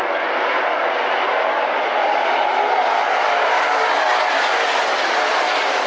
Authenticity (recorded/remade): recorded